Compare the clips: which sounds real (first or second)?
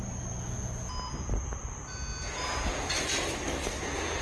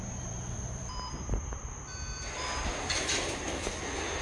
first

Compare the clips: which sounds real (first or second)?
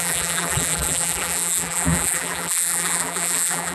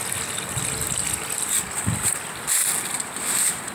second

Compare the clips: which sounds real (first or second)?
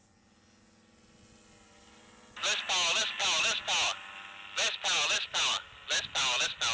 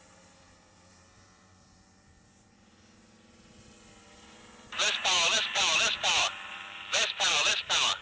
first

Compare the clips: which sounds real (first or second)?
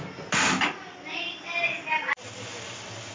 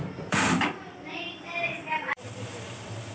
first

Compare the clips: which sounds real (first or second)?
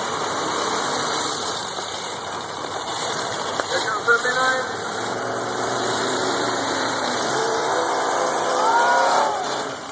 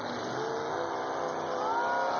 second